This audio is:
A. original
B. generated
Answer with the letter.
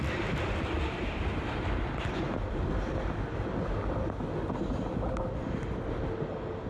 A